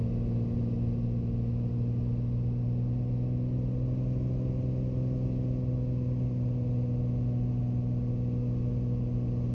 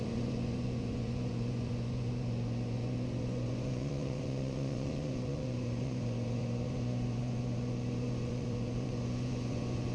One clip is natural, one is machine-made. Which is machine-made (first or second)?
second